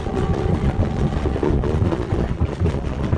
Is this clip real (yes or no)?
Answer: no